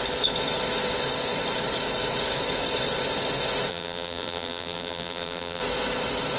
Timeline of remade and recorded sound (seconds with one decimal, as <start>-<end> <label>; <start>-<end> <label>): 0.0-3.7 recorded; 3.7-5.6 remade; 5.6-6.4 recorded